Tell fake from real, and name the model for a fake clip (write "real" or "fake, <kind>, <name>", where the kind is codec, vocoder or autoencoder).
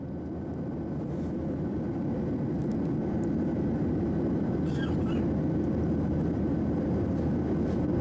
real